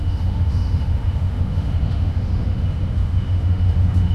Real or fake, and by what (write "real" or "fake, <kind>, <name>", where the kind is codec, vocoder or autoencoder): fake, autoencoder, DAC-VAE